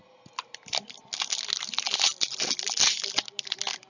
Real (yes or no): yes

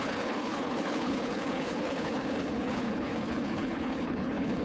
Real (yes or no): no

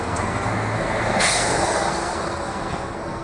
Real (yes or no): no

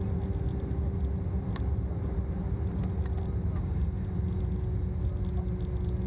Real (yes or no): yes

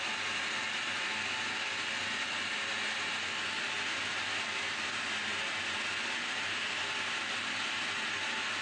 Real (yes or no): yes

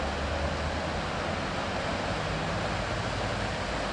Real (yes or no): yes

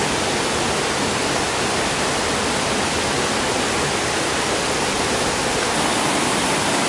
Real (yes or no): yes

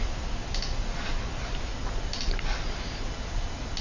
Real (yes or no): yes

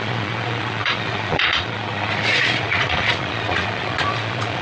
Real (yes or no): no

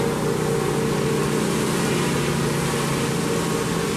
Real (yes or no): yes